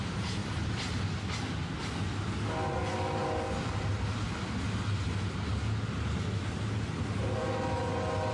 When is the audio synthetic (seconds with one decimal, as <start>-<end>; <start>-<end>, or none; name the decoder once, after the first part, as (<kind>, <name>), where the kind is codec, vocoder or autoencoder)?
none